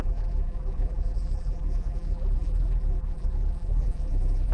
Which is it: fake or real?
fake